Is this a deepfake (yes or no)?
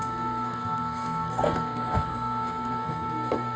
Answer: yes